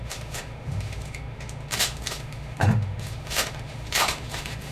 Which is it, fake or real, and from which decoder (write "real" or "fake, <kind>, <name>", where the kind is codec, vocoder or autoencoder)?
fake, autoencoder, DAC-VAE